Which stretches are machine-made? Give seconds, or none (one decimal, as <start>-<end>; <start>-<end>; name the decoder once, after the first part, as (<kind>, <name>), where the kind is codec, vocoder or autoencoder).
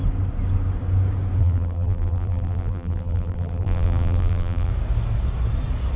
1.4-4.7 (vocoder, BigVGAN v2)